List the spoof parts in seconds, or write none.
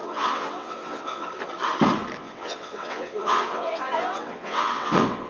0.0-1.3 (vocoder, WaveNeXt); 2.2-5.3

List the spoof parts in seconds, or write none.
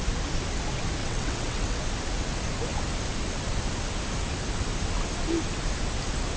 1.0-1.8 (vocoder, WaveNeXt)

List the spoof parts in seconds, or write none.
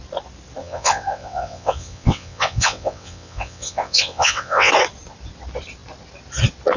0.6-4.7 (vocoder, WaveNeXt)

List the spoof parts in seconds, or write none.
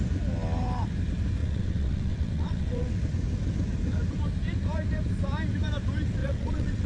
1.4-2.9 (vocoder, WaveNeXt); 6.2-6.9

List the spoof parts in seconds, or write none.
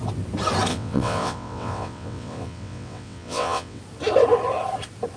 0.7-3.8 (vocoder, WaveNeXt)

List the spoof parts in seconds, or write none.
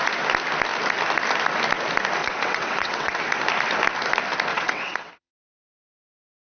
2.2-3.2 (vocoder, WaveNeXt); 4.5-5.3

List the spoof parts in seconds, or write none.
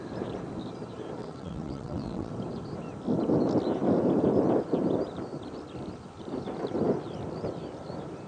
1.2-2.3 (vocoder, WaveNeXt)